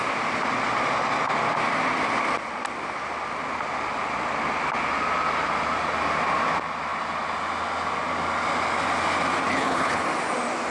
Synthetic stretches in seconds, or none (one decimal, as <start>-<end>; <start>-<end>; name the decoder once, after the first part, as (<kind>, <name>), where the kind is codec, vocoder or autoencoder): 9.5-10.0 (codec, HILCodec)